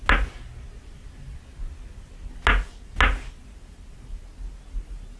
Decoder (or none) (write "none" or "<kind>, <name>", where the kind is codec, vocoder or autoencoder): none